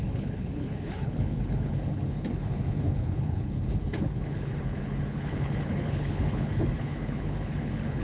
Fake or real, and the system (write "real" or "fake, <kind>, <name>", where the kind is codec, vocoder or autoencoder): fake, codec, HILCodec